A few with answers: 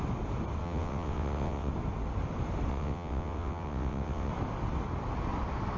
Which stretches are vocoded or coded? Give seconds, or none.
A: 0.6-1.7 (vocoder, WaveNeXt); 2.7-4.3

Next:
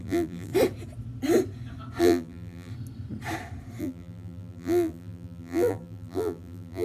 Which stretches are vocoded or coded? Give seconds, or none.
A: 0.0-0.5 (vocoder, BigVGAN v2); 2.0-2.7; 3.8-6.8

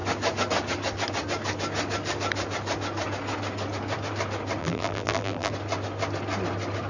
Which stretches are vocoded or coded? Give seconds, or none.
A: 4.6-5.5 (vocoder, BigVGAN v2)

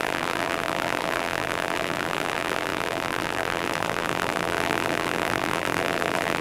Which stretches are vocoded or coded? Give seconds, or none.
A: 0.0-6.4 (vocoder, BigVGAN v2)

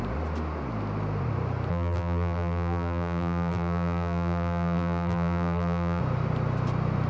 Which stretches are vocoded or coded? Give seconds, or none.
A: 1.7-6.0 (vocoder, BigVGAN v2)

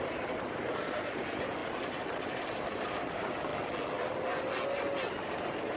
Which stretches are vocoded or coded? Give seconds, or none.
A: 0.0-3.5 (vocoder, BigVGAN v2); 5.3-5.8

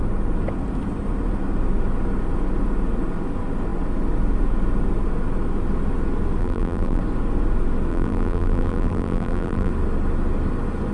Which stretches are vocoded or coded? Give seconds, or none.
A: 6.4-7.0 (vocoder, BigVGAN v2); 7.9-9.7